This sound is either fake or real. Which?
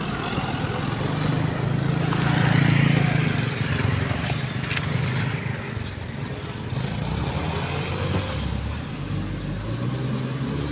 real